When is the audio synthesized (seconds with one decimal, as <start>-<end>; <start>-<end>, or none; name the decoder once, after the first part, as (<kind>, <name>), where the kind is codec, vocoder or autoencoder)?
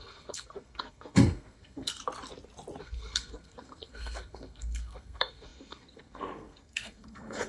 0.0-2.0 (codec, SNAC); 2.8-7.5